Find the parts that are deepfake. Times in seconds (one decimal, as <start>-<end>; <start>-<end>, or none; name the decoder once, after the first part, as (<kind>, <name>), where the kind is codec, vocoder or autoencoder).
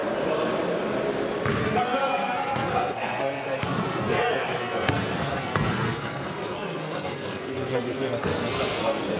1.6-9.2 (codec, SNAC)